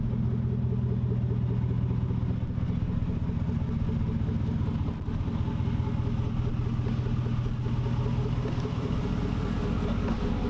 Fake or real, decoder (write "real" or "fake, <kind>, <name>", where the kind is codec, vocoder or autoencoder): real